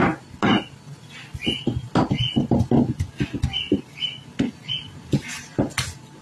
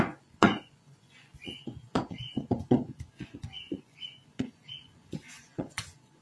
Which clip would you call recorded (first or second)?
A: first